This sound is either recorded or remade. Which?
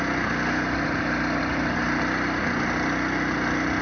recorded